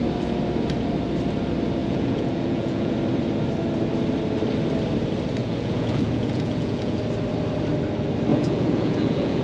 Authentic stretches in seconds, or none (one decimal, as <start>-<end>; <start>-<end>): 0.0-1.8; 2.9-5.4; 7.0-8.3